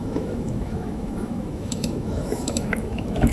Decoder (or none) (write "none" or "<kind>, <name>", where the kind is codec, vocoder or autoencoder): autoencoder, DAC-VAE